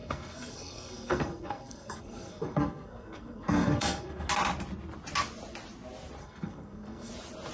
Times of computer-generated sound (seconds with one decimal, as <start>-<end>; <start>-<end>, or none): 0.0-4.3; 6.2-7.1